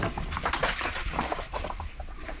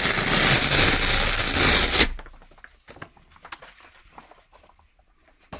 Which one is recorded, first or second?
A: second